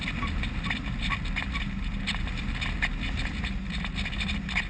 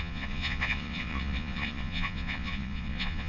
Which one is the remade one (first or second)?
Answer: second